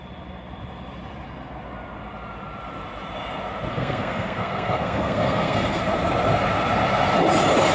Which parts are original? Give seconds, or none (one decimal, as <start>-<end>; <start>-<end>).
0.0-3.7; 5.8-7.7

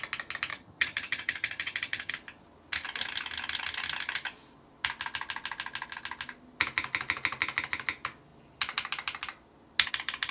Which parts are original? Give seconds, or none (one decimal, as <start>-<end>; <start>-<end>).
0.0-0.5; 2.1-10.3

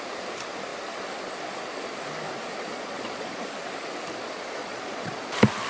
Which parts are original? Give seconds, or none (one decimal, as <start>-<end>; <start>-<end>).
0.0-2.7; 3.4-4.6; 5.3-5.7

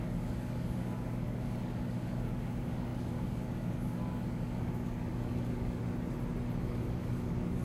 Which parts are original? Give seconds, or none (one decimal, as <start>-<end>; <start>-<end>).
5.8-6.6